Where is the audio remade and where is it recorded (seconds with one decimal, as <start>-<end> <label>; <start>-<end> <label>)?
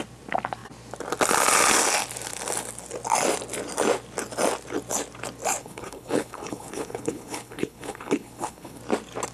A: 0.0-5.6 recorded; 5.6-8.8 remade; 8.8-9.3 recorded